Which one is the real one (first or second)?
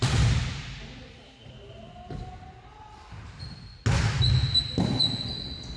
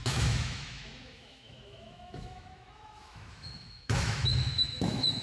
first